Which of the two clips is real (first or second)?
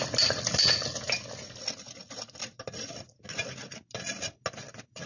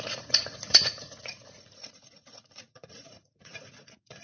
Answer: first